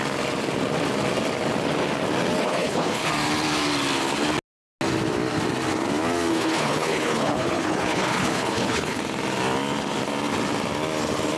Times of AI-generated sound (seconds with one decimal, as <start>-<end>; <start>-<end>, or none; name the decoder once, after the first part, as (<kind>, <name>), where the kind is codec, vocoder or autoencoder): 2.4-3.1 (codec, HILCodec); 6.3-9.0